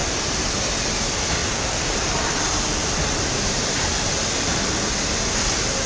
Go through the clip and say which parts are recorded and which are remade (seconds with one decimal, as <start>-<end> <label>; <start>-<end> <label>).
0.0-0.9 remade; 0.9-1.4 recorded; 1.4-4.9 remade; 4.9-5.9 recorded